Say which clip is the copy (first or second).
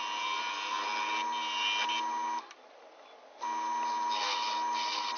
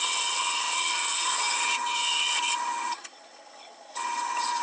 second